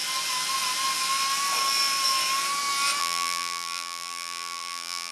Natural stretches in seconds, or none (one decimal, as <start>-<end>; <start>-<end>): 0.0-3.0